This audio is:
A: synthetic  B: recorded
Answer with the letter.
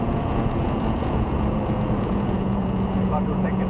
A